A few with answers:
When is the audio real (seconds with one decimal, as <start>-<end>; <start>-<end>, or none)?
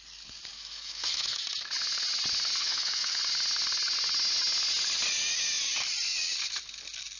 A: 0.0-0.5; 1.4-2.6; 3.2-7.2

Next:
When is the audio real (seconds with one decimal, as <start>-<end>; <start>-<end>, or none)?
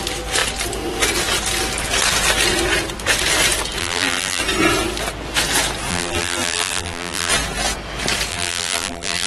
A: 0.0-3.8; 4.4-5.9; 7.3-8.3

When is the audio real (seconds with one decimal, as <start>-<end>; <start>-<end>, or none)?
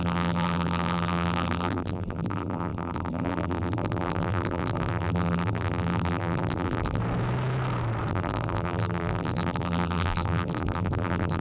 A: 7.0-8.1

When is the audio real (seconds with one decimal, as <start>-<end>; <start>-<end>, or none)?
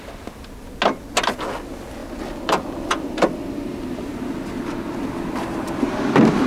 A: 0.0-6.5